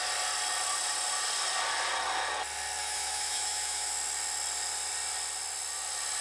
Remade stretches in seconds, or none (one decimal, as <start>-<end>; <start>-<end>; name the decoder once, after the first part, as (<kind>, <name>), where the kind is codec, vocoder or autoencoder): 2.8-3.9 (autoencoder, DAC-VAE)